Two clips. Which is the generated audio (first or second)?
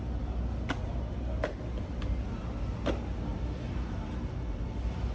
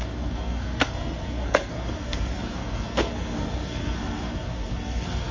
second